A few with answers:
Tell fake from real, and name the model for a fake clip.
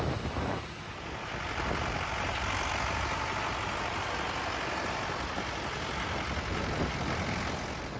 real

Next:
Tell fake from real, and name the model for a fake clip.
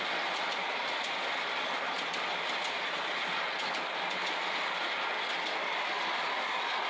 real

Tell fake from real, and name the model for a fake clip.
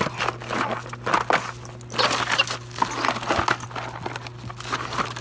real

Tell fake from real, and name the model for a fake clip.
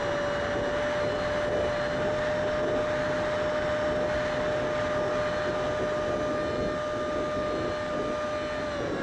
real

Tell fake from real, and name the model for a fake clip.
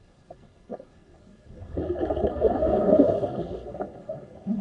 fake, codec, SNAC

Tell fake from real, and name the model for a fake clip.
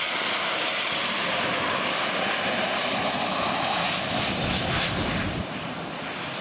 real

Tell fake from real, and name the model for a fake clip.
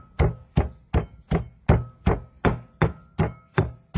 real